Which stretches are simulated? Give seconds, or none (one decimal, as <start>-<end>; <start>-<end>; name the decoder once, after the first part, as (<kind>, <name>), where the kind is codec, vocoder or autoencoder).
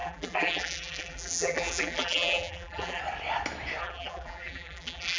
0.0-3.0 (vocoder, BigVGAN v2); 3.8-5.2